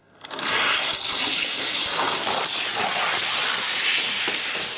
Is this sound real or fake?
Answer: real